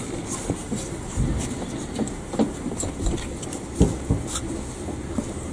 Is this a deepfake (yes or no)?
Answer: no